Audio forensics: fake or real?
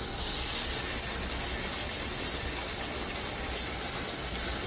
real